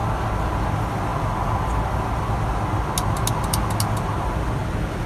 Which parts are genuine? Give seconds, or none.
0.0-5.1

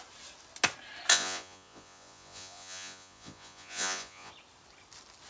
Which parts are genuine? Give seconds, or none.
0.0-1.1; 4.3-5.3

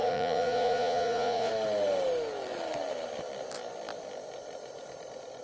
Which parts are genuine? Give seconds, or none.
1.5-5.4